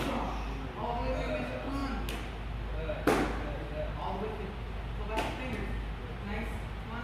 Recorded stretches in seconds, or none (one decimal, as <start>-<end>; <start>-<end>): 0.0-7.0